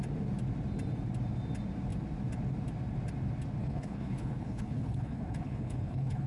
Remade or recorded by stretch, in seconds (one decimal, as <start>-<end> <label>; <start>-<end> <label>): 0.0-3.6 recorded; 3.6-6.3 remade